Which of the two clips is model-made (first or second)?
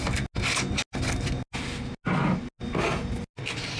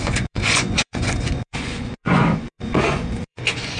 second